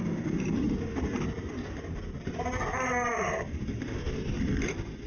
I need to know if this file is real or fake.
real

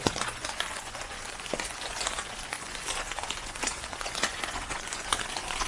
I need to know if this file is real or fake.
fake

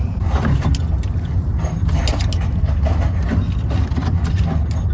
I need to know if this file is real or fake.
real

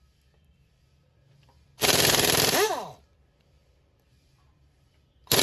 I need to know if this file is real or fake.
fake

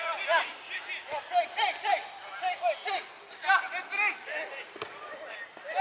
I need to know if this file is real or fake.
real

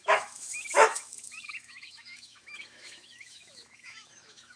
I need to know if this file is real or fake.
fake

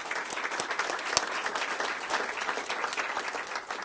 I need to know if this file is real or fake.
real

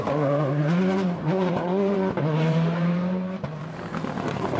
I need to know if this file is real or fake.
fake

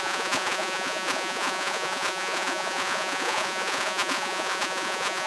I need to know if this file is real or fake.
fake